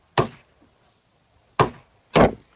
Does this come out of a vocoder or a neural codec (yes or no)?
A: no